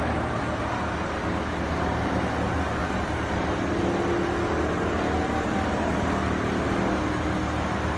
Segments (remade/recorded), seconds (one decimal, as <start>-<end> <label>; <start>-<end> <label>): 0.0-2.8 recorded; 2.8-3.8 remade; 3.8-5.3 recorded; 5.3-5.9 remade; 5.9-8.0 recorded